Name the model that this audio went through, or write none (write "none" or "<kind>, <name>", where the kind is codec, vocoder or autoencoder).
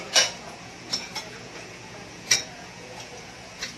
vocoder, Vocos